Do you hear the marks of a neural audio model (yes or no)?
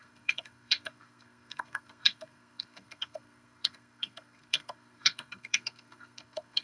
yes